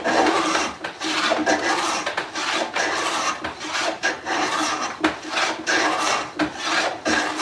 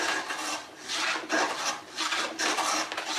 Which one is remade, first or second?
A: first